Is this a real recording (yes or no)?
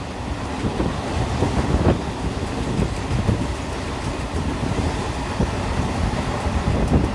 yes